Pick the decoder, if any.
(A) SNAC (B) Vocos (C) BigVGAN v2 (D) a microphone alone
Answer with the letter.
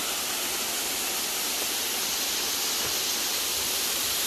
D